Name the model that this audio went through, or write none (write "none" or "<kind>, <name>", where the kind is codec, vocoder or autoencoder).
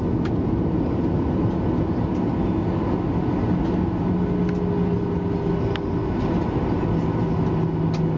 none